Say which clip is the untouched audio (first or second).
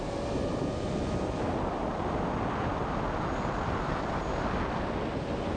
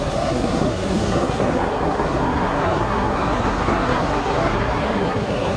first